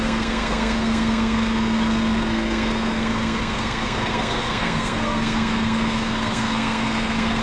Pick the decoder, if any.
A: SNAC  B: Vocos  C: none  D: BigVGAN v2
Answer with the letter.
A